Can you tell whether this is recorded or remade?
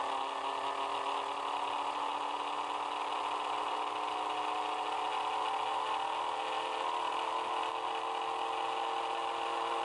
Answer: recorded